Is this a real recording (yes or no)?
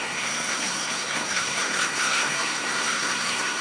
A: no